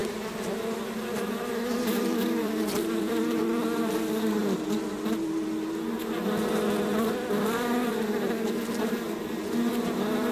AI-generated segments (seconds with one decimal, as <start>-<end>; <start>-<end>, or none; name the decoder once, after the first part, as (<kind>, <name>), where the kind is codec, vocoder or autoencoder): 0.0-4.4 (vocoder, BigVGAN v2); 8.8-10.3